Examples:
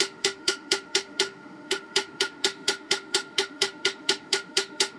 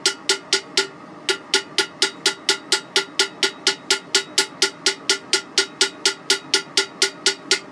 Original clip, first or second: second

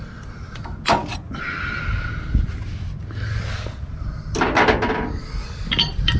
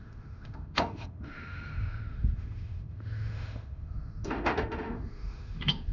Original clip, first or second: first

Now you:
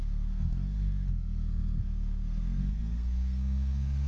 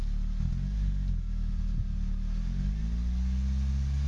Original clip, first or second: second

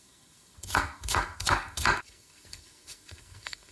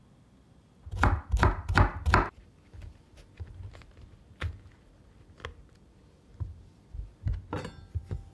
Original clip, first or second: second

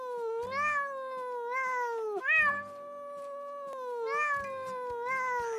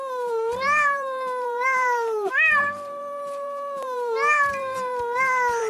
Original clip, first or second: first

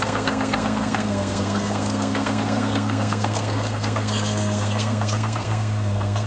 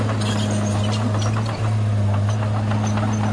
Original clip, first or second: second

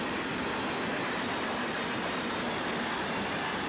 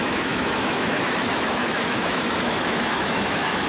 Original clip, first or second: first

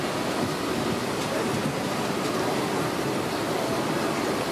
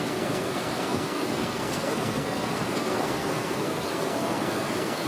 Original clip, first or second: first